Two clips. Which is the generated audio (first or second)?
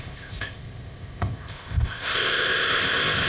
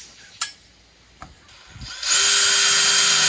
first